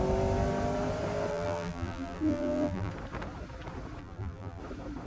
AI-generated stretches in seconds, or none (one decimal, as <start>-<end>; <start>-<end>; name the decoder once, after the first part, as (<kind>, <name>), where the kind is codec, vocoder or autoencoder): 1.3-2.9 (vocoder, BigVGAN v2); 4.0-4.6